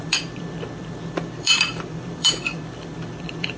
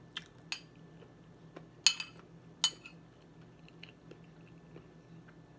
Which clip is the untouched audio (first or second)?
second